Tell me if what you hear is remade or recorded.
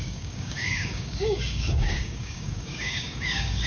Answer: remade